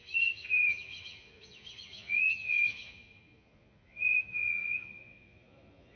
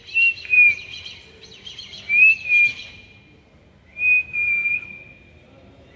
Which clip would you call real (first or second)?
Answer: second